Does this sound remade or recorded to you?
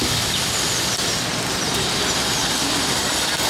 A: recorded